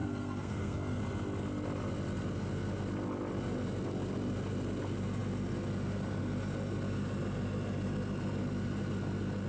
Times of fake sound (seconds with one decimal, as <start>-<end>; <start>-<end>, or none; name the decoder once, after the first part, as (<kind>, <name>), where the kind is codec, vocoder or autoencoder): 0.0-1.0 (codec, SNAC)